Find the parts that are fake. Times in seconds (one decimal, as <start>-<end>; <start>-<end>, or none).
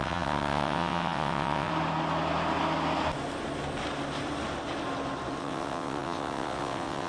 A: 0.0-1.7; 5.4-7.1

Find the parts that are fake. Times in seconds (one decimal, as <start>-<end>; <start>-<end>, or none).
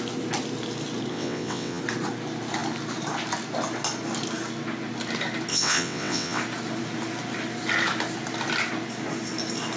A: 1.1-1.8; 5.5-6.4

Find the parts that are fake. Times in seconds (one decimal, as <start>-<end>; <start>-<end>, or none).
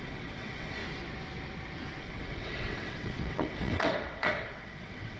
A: 0.0-0.8; 2.0-5.2